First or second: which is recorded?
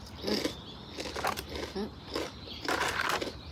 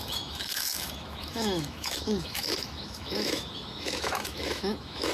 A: first